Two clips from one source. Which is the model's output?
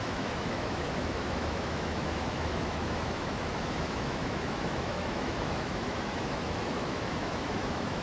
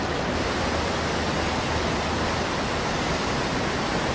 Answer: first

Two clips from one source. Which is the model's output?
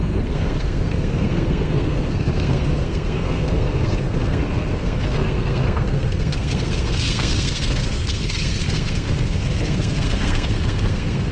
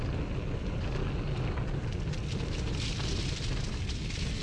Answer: first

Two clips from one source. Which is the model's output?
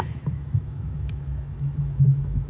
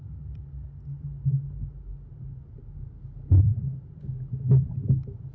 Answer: first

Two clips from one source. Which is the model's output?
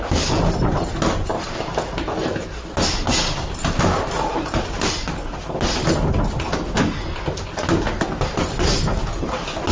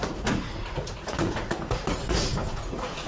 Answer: second